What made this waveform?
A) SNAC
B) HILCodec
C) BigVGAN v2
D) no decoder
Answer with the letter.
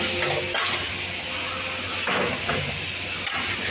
D